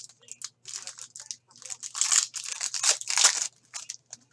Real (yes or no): yes